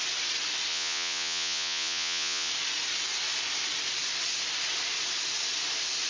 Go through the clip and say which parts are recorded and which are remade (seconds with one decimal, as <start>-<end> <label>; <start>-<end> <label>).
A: 0.0-0.7 recorded; 0.7-2.5 remade; 2.5-6.1 recorded